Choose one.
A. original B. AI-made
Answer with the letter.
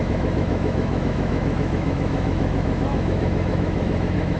B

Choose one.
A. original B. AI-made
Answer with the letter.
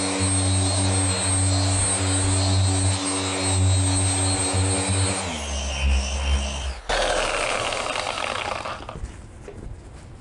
A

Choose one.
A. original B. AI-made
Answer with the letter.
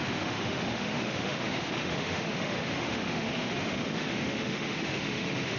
B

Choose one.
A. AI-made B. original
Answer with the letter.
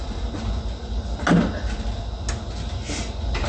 B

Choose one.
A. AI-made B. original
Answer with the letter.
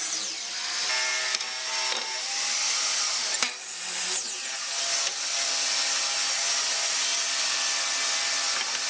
B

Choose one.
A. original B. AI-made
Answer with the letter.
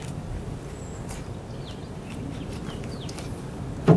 A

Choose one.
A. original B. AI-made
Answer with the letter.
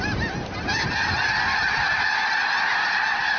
A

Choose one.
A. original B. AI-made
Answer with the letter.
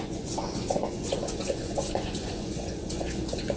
B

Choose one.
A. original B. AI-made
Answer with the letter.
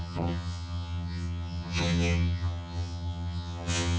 B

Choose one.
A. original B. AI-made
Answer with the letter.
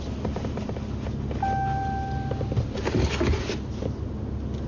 A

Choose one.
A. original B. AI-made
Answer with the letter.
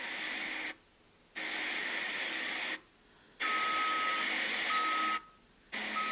A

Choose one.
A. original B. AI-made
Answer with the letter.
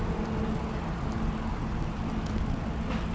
A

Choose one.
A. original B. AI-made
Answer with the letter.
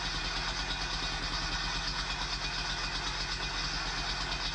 A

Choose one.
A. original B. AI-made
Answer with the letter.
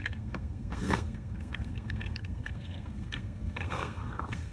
B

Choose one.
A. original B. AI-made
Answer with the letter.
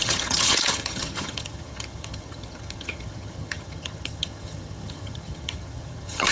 B